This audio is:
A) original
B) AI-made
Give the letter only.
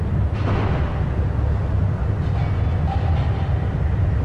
A